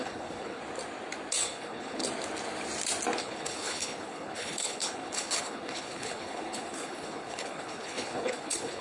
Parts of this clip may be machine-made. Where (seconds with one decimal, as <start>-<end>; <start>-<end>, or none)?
0.0-0.6; 1.4-2.0; 3.2-8.8